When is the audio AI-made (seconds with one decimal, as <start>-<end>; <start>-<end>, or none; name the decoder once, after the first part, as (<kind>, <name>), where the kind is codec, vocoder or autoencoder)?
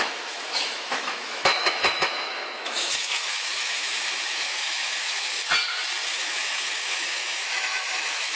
0.0-5.4 (autoencoder, DAC-VAE); 6.1-8.4